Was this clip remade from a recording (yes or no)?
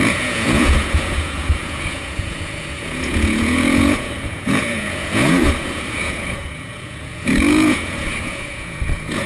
yes